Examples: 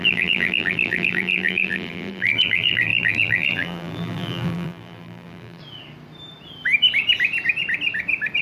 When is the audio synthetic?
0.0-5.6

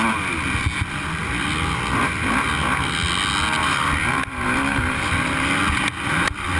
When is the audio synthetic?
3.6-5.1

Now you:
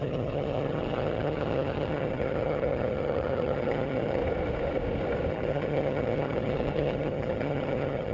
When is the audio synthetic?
0.0-4.2; 5.3-8.1

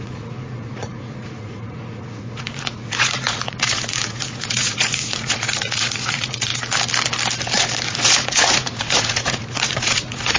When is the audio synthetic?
0.0-6.5; 7.9-10.4

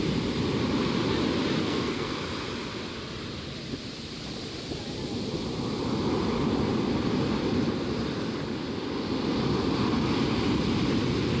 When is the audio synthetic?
1.6-2.2

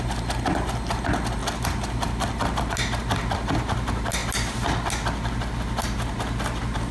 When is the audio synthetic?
none

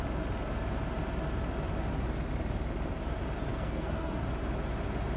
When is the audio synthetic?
3.5-4.2